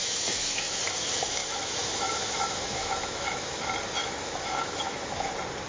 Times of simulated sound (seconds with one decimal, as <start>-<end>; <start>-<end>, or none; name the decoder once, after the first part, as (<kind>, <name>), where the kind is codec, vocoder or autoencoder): 0.0-0.8 (autoencoder, DAC-VAE); 1.4-3.6; 4.0-5.3